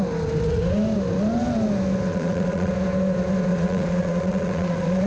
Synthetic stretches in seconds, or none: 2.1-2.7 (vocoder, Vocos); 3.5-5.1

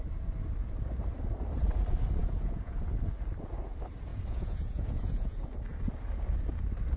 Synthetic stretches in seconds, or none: 2.2-2.8 (vocoder, Vocos); 4.1-5.4